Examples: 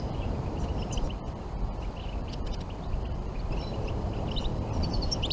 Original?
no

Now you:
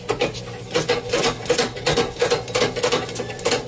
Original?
yes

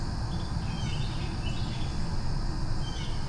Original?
yes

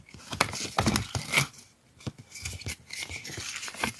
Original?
yes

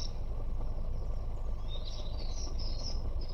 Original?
yes